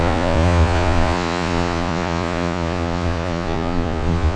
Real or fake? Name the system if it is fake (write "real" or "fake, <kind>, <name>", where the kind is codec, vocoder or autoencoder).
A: fake, vocoder, Vocos